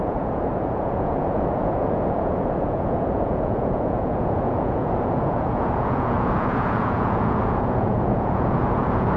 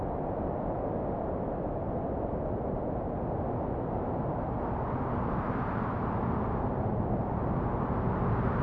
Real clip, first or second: second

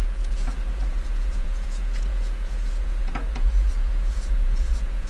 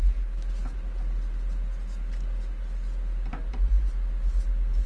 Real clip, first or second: second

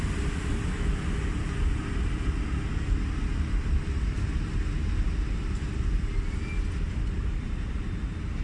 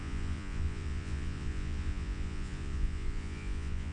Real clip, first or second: first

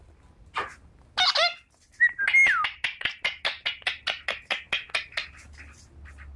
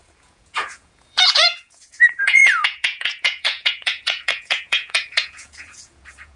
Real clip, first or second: first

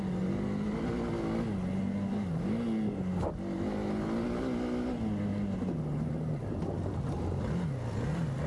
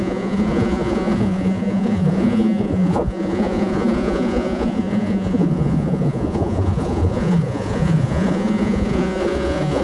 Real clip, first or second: first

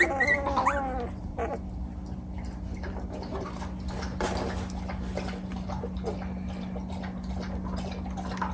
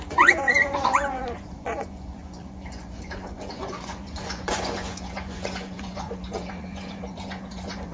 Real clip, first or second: first